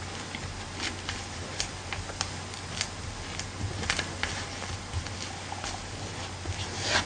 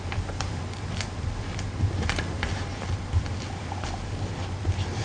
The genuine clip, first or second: first